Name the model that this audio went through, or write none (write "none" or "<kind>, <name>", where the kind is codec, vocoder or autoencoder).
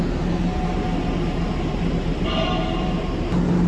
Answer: none